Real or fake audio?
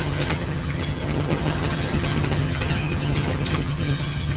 fake